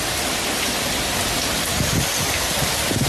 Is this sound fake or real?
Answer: real